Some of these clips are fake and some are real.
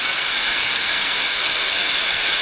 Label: fake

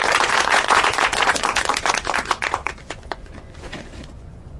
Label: fake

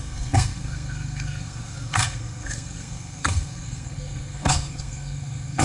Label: fake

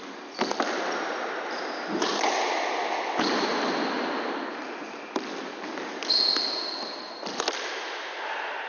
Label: real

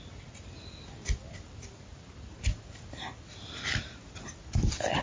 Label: real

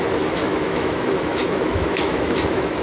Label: fake